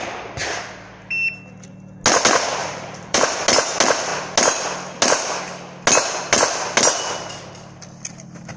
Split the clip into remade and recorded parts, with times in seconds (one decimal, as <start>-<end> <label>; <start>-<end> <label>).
0.0-2.6 recorded; 2.6-3.2 remade; 3.2-8.6 recorded